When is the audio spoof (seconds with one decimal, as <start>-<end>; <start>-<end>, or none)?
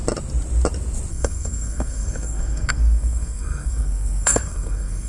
1.1-5.1